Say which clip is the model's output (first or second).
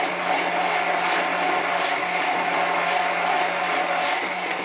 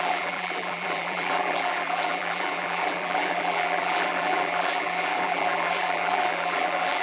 second